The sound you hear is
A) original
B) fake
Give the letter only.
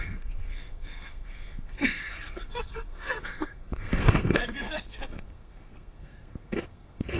B